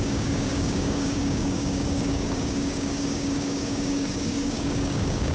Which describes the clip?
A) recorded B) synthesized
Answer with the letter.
B